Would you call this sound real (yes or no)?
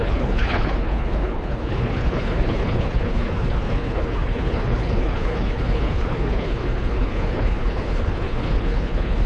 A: no